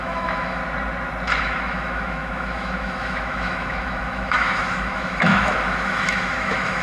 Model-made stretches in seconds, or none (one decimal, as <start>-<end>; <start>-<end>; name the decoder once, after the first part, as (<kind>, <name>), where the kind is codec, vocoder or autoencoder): 0.0-0.6 (autoencoder, DAC-VAE); 1.4-6.8